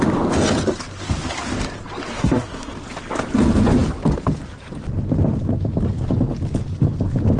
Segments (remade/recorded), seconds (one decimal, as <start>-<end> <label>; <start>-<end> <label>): 0.0-2.1 recorded; 2.1-2.7 remade; 2.7-7.4 recorded